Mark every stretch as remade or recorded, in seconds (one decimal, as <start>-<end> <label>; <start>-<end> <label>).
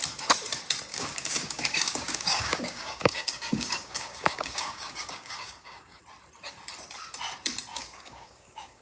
0.0-0.9 recorded; 0.9-6.0 remade; 6.0-7.7 recorded; 7.7-8.8 remade